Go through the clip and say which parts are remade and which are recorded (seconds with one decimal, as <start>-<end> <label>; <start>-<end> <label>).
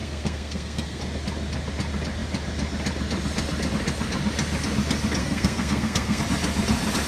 0.0-1.0 remade; 1.0-5.2 recorded; 5.2-6.2 remade; 6.2-7.1 recorded